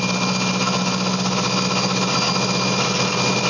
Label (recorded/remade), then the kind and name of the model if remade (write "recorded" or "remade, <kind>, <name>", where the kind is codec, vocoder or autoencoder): recorded